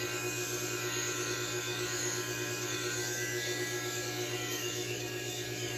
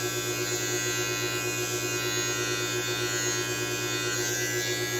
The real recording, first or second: second